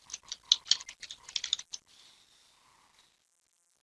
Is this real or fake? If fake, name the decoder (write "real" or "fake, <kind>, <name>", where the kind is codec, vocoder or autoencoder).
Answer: real